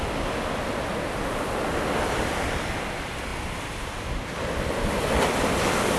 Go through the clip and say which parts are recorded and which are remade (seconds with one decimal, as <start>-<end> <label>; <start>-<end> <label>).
0.0-6.0 recorded